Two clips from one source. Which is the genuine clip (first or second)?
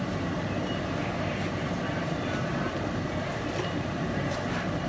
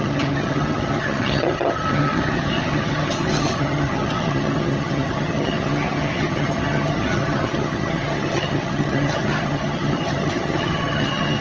first